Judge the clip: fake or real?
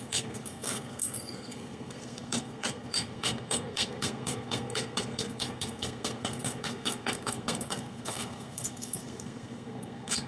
fake